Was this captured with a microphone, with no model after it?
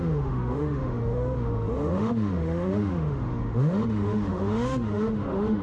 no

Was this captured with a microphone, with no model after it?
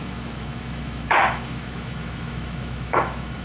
no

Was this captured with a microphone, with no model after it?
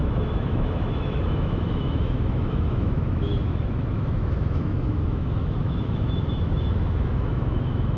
no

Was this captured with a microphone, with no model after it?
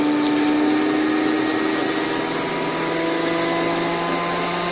yes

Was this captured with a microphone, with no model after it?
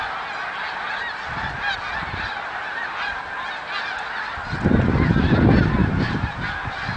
yes